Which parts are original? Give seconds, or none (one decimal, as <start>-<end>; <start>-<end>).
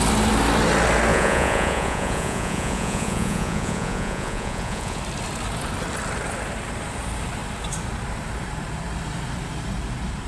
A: 0.0-1.1; 5.0-10.3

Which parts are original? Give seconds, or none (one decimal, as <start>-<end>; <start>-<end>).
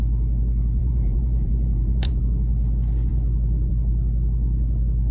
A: 0.0-0.8; 2.2-5.1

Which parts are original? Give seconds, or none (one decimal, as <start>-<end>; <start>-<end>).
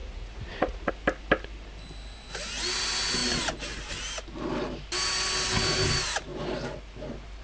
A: 0.9-7.4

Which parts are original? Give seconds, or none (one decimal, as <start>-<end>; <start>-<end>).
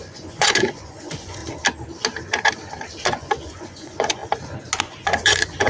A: 1.4-3.1; 4.2-4.8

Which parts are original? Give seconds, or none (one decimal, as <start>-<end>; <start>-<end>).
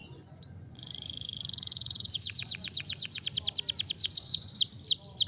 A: 3.2-4.0; 4.6-5.3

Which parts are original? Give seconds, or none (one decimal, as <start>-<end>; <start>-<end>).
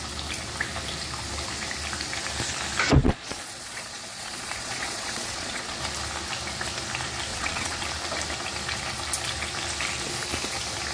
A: 0.0-3.0; 5.8-7.3; 7.8-10.9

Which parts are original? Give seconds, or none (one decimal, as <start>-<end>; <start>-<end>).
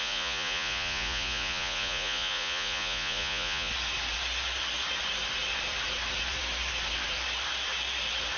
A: 3.7-8.4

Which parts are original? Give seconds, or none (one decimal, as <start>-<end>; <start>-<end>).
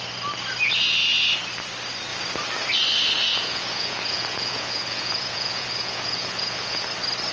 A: 0.0-3.3; 6.8-7.3